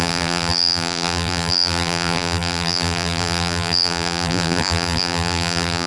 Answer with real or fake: fake